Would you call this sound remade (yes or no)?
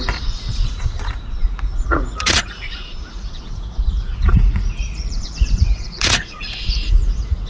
yes